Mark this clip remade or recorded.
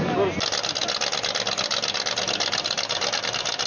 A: recorded